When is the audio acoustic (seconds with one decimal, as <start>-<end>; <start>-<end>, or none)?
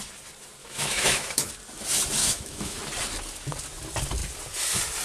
0.0-0.6; 1.5-2.2; 2.8-5.0